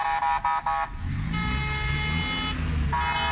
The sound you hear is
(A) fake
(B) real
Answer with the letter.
B